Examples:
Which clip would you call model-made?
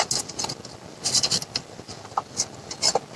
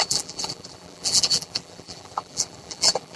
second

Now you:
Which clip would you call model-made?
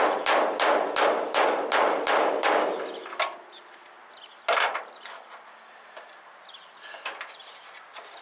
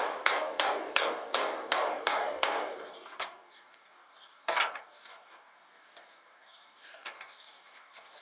second